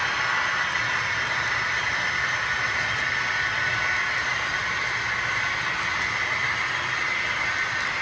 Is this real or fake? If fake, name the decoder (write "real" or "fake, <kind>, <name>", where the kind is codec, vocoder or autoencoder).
real